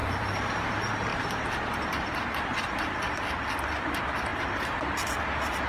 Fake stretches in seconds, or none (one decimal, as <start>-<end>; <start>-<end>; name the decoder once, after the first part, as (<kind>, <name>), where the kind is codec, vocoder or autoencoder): 0.0-0.7 (vocoder, BigVGAN v2); 4.3-5.2